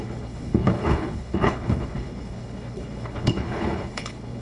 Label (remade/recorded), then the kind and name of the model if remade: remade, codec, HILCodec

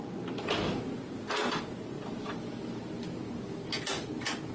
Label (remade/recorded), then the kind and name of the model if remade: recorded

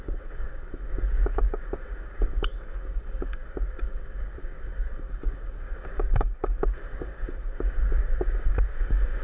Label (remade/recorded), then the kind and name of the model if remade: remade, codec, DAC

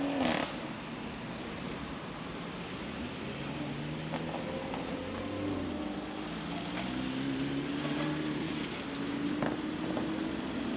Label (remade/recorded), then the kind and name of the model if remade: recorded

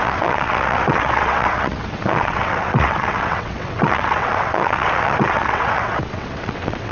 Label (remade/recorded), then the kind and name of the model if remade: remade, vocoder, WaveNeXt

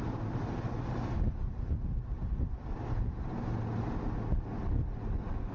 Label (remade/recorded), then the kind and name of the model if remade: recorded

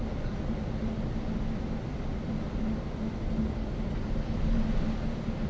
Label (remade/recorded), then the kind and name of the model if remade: recorded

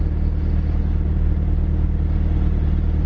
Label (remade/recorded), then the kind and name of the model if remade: recorded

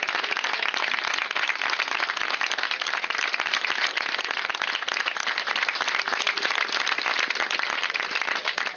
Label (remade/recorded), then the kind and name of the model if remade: recorded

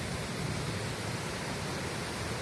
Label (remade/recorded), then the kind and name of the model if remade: recorded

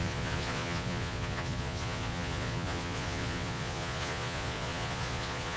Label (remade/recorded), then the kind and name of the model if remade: remade, vocoder, Vocos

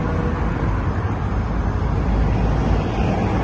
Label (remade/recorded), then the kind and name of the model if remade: recorded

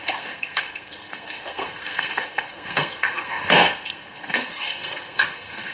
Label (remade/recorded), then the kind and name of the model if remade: remade, codec, SNAC